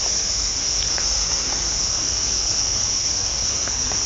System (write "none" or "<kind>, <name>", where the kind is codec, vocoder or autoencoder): codec, SNAC